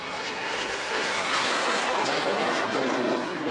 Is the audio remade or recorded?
remade